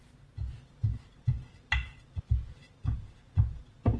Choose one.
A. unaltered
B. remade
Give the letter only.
A